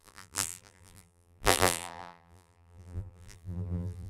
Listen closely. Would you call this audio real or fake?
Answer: fake